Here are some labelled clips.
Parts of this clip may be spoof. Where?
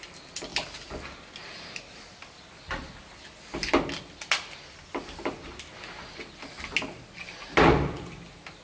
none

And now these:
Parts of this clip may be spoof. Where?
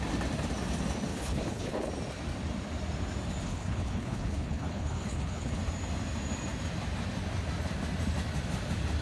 1.1-1.9; 3.4-5.6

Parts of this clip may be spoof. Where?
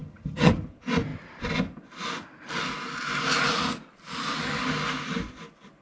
0.0-0.5